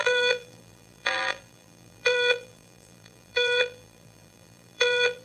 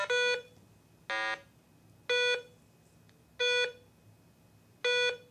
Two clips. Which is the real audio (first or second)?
second